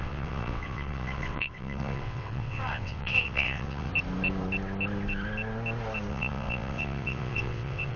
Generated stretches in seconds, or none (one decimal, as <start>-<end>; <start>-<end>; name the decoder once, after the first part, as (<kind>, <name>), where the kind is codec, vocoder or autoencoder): 0.0-3.9 (vocoder, WaveNeXt); 6.1-8.0